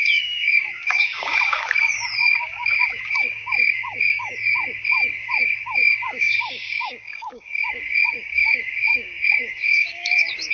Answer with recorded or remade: remade